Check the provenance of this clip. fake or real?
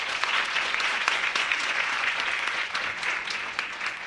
fake